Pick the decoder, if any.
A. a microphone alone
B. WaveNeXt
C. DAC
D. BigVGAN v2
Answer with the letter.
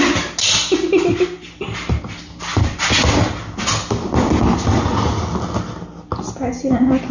A